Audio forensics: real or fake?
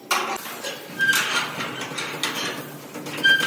real